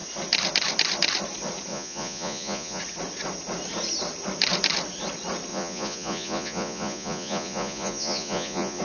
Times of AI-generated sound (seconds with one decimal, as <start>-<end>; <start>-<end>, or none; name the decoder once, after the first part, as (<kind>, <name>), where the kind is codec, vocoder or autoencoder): 1.7-2.8 (vocoder, Vocos); 5.5-8.8